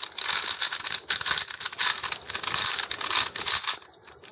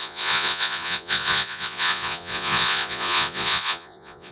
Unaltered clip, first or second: first